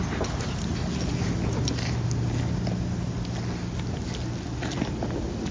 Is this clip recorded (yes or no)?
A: yes